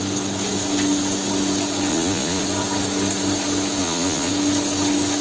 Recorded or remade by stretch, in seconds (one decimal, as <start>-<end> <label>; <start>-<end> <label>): 0.0-1.9 recorded; 1.9-2.4 remade; 2.4-3.8 recorded; 3.8-4.3 remade; 4.3-5.2 recorded